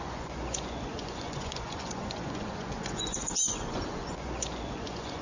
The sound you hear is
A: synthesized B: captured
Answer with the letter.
A